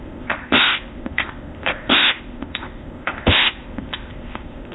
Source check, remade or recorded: remade